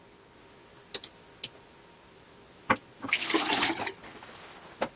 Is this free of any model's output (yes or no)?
yes